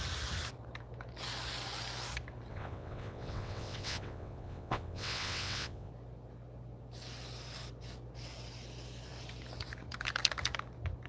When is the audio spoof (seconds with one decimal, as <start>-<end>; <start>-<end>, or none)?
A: 2.5-5.9